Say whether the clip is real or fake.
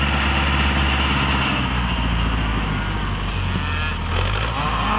real